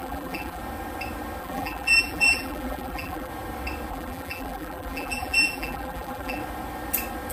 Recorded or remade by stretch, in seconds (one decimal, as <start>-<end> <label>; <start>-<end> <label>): 0.0-0.6 remade; 0.6-1.4 recorded; 1.4-3.3 remade; 3.3-3.9 recorded; 3.9-6.4 remade; 6.4-7.3 recorded